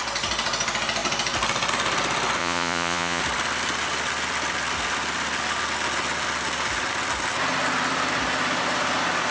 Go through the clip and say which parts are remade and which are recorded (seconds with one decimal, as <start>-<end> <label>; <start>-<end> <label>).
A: 0.0-2.4 recorded; 2.4-3.2 remade; 3.2-9.3 recorded